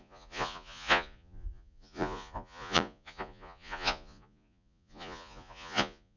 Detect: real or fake fake